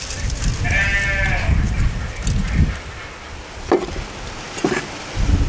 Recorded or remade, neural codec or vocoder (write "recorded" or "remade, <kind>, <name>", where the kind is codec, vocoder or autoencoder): recorded